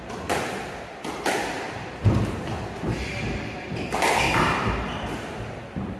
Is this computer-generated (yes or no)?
no